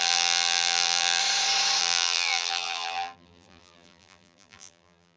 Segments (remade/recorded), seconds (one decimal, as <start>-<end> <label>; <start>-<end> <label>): 0.0-1.2 remade; 1.2-1.8 recorded; 1.8-5.2 remade